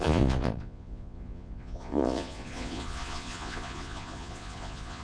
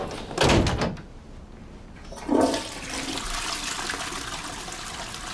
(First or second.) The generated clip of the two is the first